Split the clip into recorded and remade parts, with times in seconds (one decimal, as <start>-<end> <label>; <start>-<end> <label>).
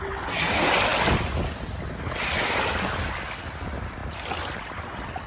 0.0-5.3 recorded